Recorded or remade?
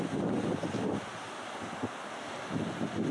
recorded